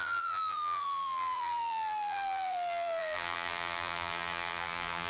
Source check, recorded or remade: remade